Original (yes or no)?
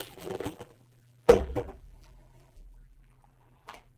no